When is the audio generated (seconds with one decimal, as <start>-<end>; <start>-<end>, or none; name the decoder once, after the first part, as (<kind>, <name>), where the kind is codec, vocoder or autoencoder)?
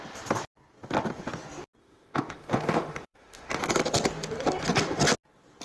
1.8-3.6 (autoencoder, DAC-VAE)